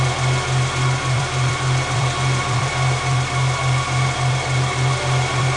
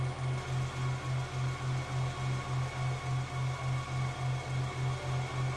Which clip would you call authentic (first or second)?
second